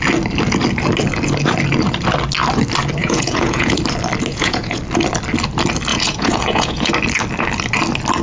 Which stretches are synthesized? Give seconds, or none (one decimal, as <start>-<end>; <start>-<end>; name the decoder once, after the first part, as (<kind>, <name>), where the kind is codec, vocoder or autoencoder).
3.0-3.8 (vocoder, Vocos); 4.3-4.8; 5.9-6.9